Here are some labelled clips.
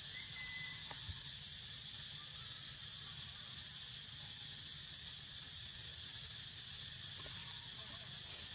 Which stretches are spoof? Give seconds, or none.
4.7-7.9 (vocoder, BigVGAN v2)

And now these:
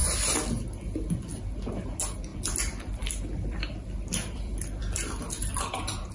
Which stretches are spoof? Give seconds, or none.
2.3-6.1 (vocoder, BigVGAN v2)

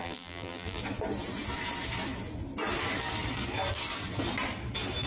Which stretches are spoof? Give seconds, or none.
0.0-0.8 (vocoder, BigVGAN v2)

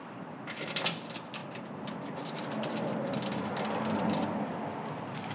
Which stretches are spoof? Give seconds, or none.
none

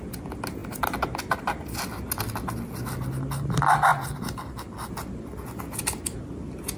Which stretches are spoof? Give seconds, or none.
none

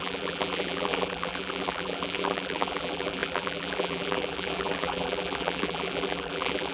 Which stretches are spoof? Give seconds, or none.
0.0-6.7 (vocoder, BigVGAN v2)